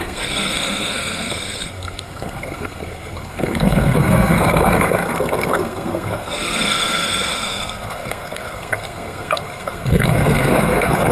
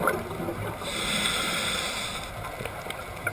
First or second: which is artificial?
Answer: first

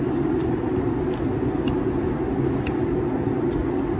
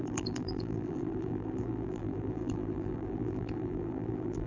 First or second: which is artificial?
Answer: second